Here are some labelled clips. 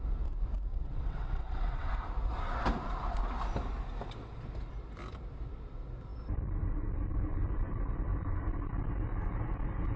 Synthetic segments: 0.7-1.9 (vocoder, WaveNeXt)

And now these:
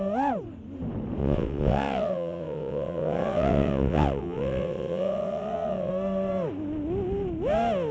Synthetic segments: 1.2-5.9 (vocoder, WaveNeXt)